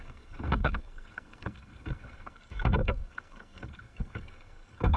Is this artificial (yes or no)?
yes